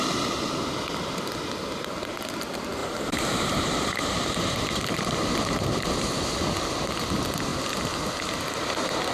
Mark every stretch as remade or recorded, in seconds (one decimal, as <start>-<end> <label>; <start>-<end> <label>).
0.0-2.8 recorded; 2.8-5.8 remade; 5.8-9.1 recorded

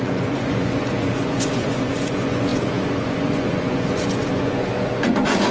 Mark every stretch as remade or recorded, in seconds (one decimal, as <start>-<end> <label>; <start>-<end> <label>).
0.0-5.5 remade

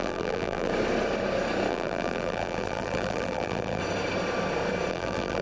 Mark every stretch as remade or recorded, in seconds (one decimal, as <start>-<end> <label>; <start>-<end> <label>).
0.0-0.7 remade; 0.7-1.7 recorded; 1.7-3.8 remade; 3.8-4.9 recorded; 4.9-5.4 remade

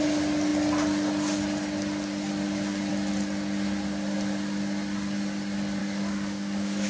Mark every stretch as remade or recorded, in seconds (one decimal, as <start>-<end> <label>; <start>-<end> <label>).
0.0-5.8 recorded; 5.8-6.9 remade

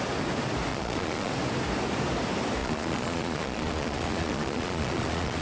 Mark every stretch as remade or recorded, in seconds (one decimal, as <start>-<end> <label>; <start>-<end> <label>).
0.0-0.7 recorded; 0.7-1.3 remade; 1.3-2.6 recorded; 2.6-5.4 remade

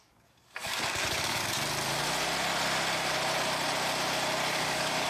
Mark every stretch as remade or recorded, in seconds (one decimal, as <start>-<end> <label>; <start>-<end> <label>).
0.0-1.4 remade; 1.4-4.5 recorded; 4.5-5.1 remade

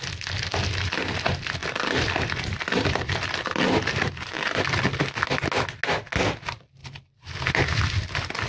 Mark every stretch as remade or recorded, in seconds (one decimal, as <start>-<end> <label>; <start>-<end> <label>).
0.0-1.6 recorded; 1.6-4.1 remade; 4.1-6.8 recorded; 6.8-7.5 remade; 7.5-8.5 recorded

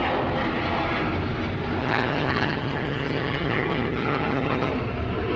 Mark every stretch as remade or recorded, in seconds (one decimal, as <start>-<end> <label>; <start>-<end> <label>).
0.0-1.8 recorded; 1.8-4.7 remade; 4.7-5.4 recorded